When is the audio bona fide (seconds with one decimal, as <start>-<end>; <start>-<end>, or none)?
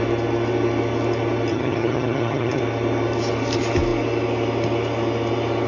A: 0.0-1.5; 2.6-5.7